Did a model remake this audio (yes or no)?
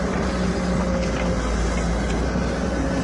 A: no